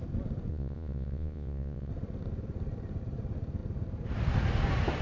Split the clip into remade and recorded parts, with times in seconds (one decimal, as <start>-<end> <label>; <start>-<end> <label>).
0.0-0.5 recorded; 0.5-1.9 remade; 1.9-5.0 recorded